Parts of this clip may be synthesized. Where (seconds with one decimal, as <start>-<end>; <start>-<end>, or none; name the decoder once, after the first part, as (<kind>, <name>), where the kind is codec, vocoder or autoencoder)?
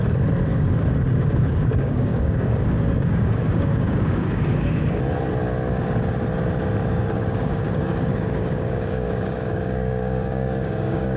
0.5-5.0 (codec, DAC); 6.8-11.2